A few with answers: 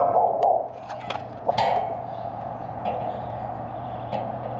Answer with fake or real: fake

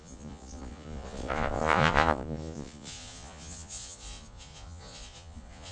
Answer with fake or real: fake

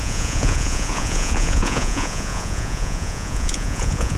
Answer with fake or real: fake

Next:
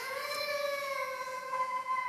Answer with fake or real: fake